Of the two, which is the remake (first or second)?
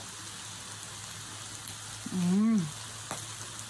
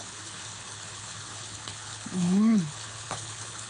second